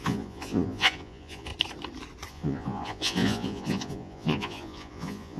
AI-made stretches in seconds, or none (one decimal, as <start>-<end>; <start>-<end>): 0.0-1.5; 2.3-5.4